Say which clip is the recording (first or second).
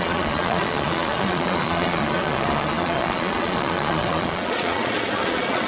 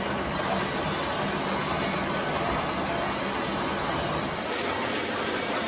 second